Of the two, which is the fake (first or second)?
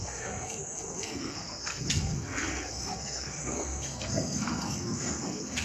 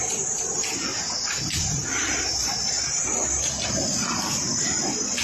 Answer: first